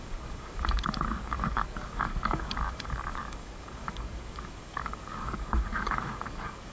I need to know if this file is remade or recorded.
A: remade